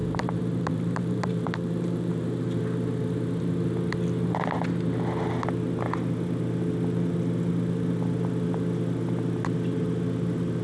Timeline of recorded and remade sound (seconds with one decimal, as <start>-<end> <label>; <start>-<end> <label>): 0.0-2.6 remade; 2.6-10.6 recorded